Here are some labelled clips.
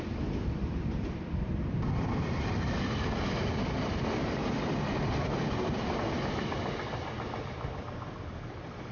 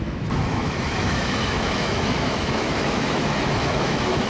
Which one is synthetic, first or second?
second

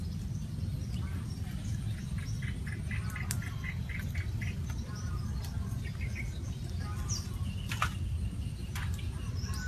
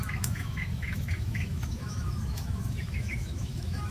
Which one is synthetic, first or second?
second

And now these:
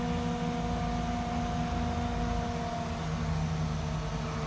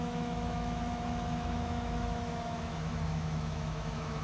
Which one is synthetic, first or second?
second